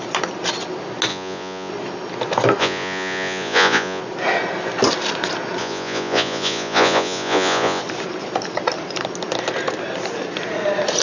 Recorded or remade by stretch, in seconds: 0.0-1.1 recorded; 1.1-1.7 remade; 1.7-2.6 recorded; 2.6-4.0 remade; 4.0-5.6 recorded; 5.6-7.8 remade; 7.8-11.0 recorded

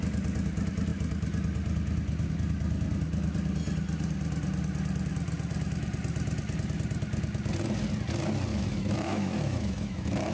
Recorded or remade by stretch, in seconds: 0.0-8.5 recorded; 8.5-10.3 remade

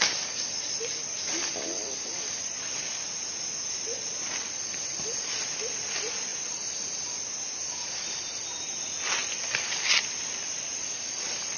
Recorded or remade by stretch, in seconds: 0.0-6.3 recorded; 6.3-7.1 remade; 7.1-11.6 recorded